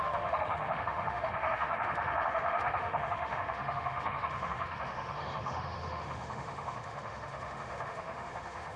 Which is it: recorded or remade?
remade